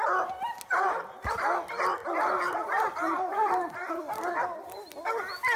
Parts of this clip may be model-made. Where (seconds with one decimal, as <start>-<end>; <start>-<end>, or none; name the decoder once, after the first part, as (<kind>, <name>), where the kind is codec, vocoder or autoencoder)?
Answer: 2.0-3.9 (vocoder, BigVGAN v2)